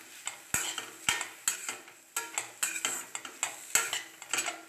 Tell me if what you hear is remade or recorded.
recorded